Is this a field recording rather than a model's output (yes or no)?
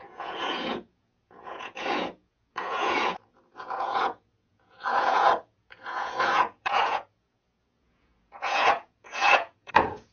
no